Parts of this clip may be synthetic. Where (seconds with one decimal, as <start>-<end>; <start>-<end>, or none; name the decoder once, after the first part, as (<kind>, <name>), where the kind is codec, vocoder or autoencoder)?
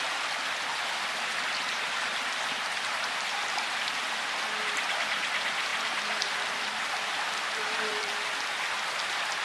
5.7-9.0 (vocoder, BigVGAN v2)